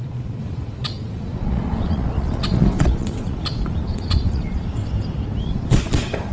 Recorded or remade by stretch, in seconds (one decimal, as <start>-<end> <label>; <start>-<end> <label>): 0.0-4.8 remade; 4.8-5.4 recorded; 5.4-6.3 remade